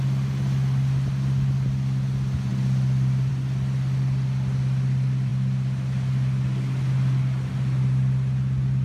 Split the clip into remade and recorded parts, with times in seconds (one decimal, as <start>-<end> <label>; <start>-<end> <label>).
0.0-8.8 recorded